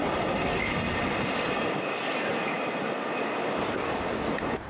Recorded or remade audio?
recorded